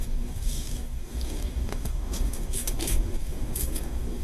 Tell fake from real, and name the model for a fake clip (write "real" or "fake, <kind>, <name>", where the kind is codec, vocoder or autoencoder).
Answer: fake, codec, DAC